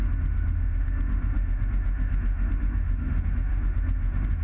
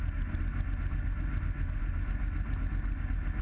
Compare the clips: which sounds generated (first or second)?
first